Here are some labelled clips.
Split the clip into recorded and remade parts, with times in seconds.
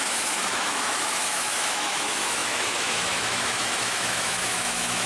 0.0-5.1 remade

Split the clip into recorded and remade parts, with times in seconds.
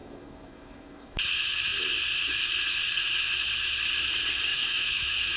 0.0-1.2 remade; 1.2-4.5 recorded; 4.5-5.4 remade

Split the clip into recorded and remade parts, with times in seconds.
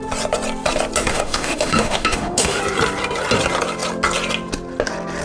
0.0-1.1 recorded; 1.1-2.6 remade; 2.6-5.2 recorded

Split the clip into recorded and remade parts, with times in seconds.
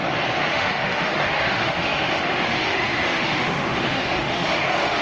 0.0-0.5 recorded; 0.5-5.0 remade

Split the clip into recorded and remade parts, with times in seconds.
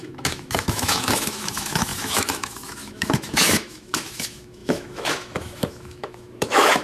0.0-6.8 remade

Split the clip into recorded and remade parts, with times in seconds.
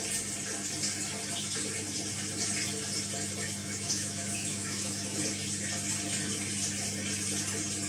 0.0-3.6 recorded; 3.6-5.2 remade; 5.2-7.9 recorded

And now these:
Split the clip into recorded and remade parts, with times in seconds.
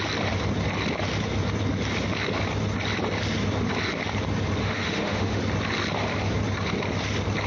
0.0-4.6 recorded; 4.6-5.4 remade; 5.4-7.5 recorded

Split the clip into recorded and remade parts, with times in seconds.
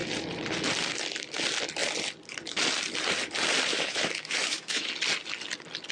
0.0-3.7 recorded; 3.7-4.9 remade; 4.9-5.9 recorded